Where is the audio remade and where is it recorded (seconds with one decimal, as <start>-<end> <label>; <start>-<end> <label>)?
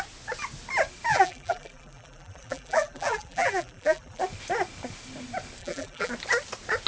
0.0-1.1 recorded; 1.1-4.2 remade; 4.2-5.6 recorded; 5.6-6.1 remade; 6.1-6.9 recorded